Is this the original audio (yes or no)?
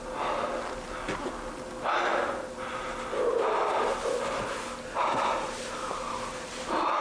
yes